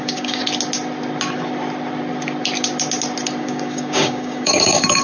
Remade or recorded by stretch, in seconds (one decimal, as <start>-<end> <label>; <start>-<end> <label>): 0.0-0.4 remade; 0.4-3.4 recorded; 3.4-5.0 remade